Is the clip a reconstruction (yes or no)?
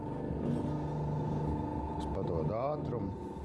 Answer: no